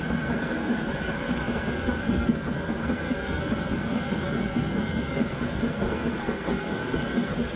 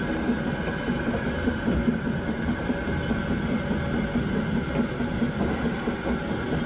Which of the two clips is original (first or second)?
second